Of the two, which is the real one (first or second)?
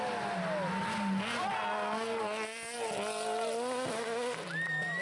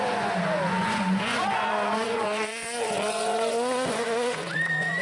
first